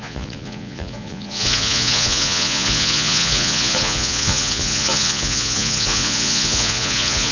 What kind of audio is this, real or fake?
fake